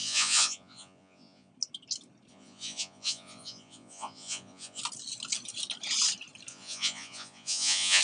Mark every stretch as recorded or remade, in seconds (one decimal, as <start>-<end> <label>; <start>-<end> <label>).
0.0-1.5 remade; 1.5-2.3 recorded; 2.3-4.8 remade; 4.8-6.5 recorded; 6.5-8.0 remade